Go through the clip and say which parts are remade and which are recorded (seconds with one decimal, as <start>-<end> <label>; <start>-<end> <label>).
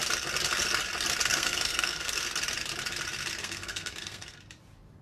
0.0-1.3 recorded; 1.3-2.3 remade; 2.3-3.4 recorded; 3.4-4.4 remade; 4.4-5.0 recorded